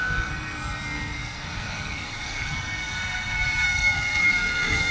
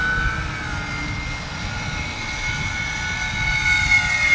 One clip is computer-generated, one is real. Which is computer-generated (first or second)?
first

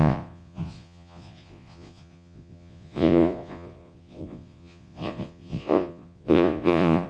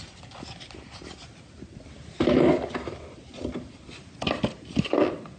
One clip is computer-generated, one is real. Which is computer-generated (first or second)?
first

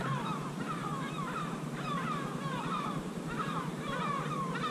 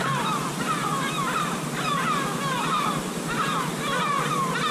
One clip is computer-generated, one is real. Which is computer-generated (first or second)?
first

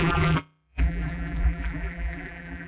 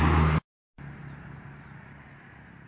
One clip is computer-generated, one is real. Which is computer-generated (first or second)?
first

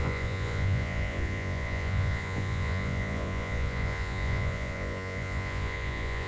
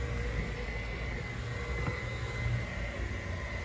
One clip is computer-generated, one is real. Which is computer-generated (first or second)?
first